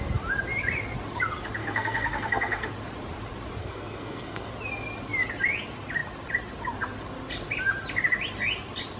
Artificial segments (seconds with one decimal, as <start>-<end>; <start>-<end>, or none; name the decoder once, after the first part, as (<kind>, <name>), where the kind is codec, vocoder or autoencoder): 1.6-2.7 (codec, SNAC); 3.6-4.5